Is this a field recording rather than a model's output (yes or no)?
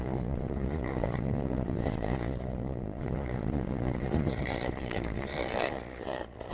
no